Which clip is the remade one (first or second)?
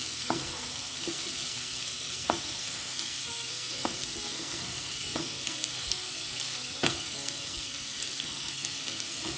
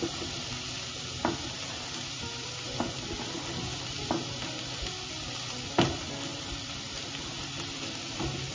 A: first